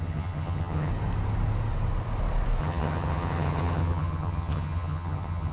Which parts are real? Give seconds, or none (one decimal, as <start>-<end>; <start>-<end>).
0.9-2.6